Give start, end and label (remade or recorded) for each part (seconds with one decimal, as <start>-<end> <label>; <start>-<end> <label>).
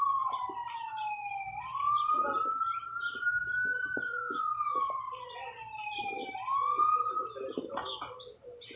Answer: 0.0-4.1 recorded; 4.1-4.9 remade; 4.9-8.8 recorded